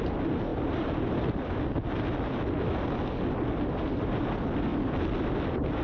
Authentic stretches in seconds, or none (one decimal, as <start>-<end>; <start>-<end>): 0.0-5.8